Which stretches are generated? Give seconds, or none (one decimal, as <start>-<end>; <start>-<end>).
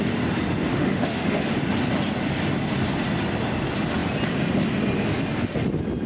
0.7-1.5